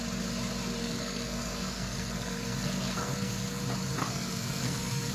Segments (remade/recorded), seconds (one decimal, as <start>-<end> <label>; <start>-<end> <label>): 0.0-0.8 recorded; 0.8-3.6 remade; 3.6-4.0 recorded; 4.0-5.1 remade